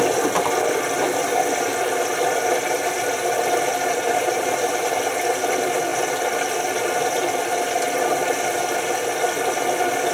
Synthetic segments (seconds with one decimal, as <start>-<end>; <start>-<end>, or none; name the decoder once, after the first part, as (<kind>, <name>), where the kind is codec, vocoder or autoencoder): 3.7-5.0 (vocoder, BigVGAN v2)